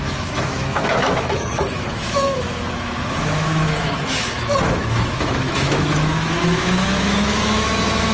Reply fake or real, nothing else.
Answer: fake